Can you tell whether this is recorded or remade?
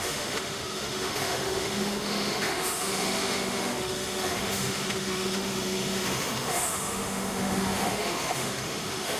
remade